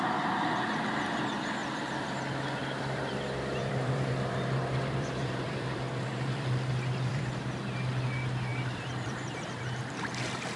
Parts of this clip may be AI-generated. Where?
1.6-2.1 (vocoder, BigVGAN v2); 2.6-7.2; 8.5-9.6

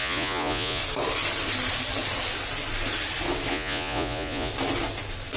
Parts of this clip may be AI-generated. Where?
0.0-0.8 (vocoder, Vocos); 3.5-4.5